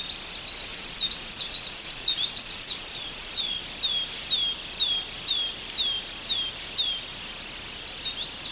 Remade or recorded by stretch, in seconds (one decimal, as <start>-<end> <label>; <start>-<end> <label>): 0.0-0.7 recorded; 0.7-3.6 remade; 3.6-8.5 recorded